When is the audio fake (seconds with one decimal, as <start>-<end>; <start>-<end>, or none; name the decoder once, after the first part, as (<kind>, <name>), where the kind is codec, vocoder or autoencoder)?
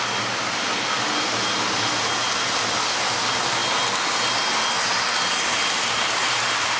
none